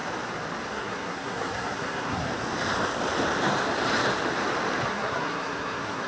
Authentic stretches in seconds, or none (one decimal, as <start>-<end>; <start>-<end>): 0.0-0.7; 2.3-4.9